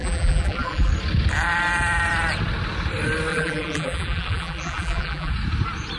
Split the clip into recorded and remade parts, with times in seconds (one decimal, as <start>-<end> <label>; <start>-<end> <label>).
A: 0.0-0.9 remade; 0.9-3.3 recorded; 3.3-5.3 remade; 5.3-6.0 recorded